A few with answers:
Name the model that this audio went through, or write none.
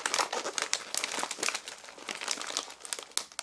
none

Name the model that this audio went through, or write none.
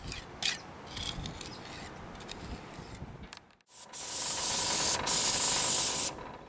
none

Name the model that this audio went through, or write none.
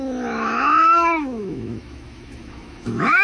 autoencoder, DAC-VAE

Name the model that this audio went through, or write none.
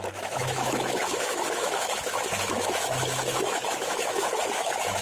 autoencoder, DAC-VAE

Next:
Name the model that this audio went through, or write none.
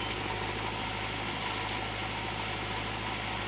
none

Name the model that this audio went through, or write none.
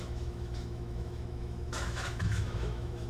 autoencoder, DAC-VAE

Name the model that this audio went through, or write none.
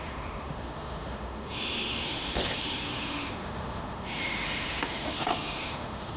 autoencoder, DAC-VAE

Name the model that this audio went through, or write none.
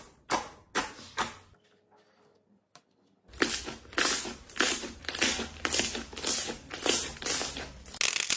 none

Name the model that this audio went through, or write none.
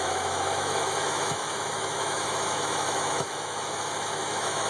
autoencoder, DAC-VAE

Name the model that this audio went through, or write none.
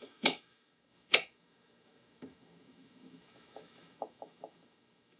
autoencoder, DAC-VAE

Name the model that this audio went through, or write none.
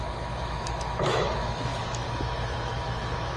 autoencoder, DAC-VAE